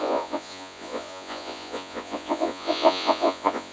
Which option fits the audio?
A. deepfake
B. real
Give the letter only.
A